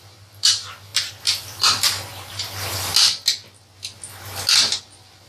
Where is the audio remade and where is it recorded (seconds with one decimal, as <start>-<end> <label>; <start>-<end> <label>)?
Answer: 0.0-0.9 remade; 0.9-1.6 recorded; 1.6-2.9 remade; 2.9-4.8 recorded; 4.8-5.3 remade